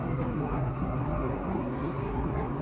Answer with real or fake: fake